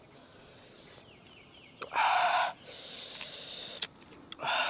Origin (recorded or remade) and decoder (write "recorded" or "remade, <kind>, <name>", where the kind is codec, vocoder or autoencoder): recorded